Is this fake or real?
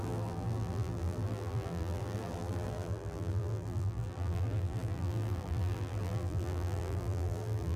fake